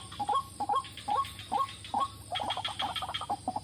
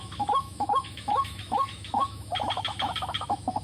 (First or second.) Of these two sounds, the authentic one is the first